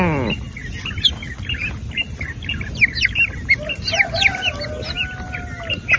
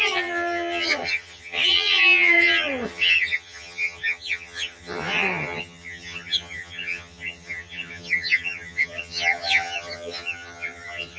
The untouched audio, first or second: first